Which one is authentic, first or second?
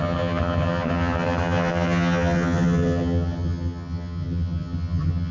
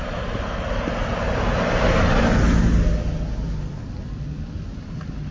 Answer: second